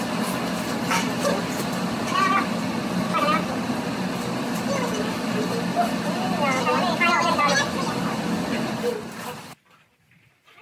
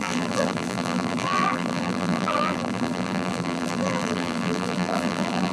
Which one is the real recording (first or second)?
first